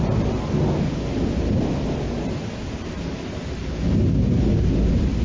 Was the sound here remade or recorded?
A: recorded